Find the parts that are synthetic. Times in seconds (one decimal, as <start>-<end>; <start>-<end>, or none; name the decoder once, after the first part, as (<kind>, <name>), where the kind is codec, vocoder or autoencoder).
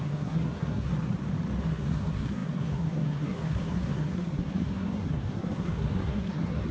0.0-0.9 (codec, SNAC); 1.6-6.7